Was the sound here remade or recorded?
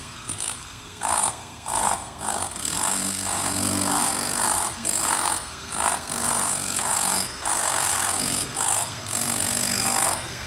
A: remade